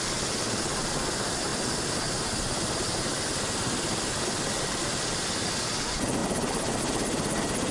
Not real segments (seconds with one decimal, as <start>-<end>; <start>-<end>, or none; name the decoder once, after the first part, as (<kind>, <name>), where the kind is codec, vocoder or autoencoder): none